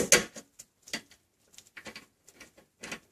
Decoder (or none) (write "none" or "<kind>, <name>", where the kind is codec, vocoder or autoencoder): none